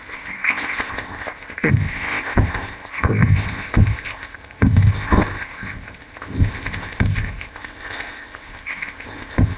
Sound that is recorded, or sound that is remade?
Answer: remade